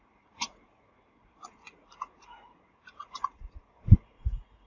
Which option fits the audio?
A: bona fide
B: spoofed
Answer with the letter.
B